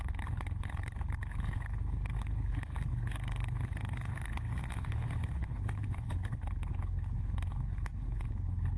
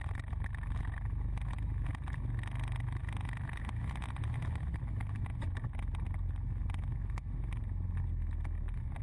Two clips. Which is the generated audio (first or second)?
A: first